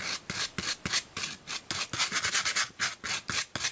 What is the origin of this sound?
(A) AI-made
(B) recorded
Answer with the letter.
B